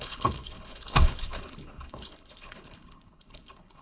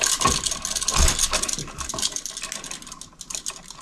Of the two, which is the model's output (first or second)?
first